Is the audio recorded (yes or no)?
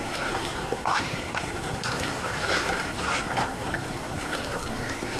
no